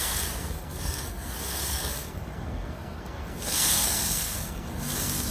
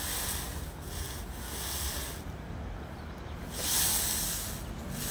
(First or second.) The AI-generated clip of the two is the first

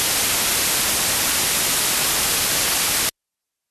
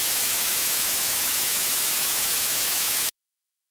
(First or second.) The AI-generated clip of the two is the second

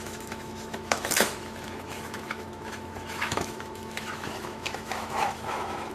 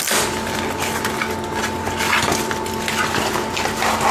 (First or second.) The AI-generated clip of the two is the first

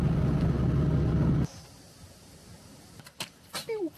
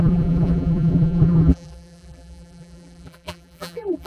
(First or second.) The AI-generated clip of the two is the second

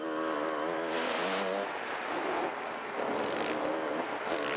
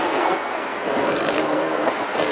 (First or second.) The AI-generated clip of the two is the second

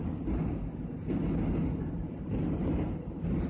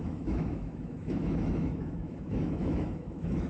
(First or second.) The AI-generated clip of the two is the second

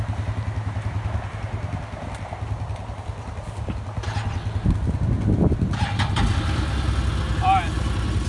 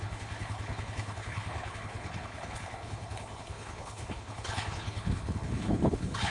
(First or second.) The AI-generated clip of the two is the second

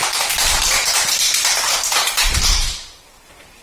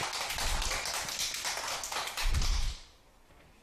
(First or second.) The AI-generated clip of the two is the first